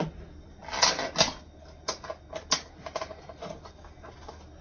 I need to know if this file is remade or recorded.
recorded